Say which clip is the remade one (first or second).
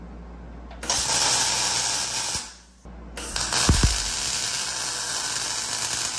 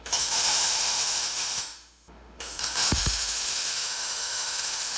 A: second